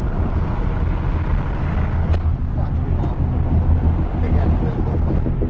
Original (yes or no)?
yes